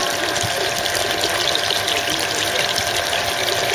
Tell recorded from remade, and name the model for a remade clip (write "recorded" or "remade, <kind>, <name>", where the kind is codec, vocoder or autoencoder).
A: recorded